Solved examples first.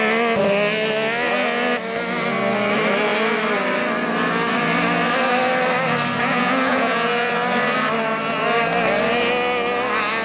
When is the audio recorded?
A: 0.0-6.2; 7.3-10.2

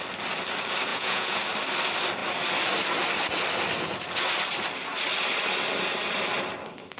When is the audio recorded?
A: 0.0-0.9; 1.4-7.0